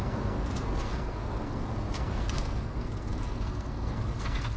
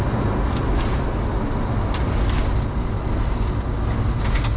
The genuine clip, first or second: second